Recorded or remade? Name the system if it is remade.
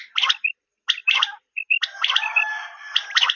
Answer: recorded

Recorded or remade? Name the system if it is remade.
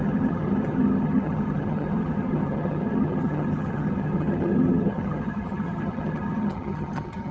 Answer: remade, vocoder, HiFi-GAN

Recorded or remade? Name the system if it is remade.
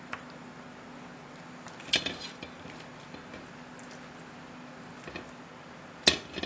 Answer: recorded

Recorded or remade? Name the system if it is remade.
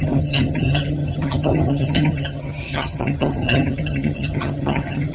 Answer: remade, vocoder, HiFi-GAN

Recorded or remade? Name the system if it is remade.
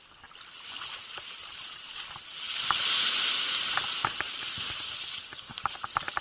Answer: recorded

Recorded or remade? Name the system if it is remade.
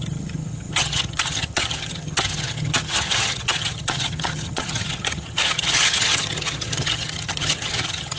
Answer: remade, vocoder, HiFi-GAN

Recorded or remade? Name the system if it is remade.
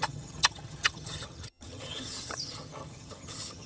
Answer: remade, vocoder, HiFi-GAN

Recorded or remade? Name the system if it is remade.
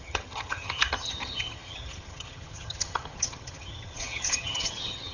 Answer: remade, vocoder, HiFi-GAN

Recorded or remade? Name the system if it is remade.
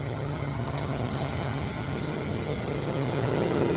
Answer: remade, vocoder, HiFi-GAN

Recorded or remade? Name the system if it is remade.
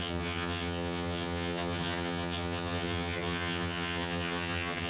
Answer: remade, vocoder, HiFi-GAN